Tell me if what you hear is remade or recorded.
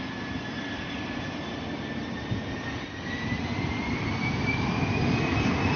remade